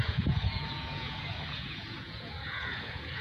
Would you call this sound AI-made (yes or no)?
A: yes